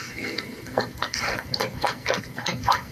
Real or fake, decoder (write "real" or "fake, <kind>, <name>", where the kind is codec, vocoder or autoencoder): fake, codec, SNAC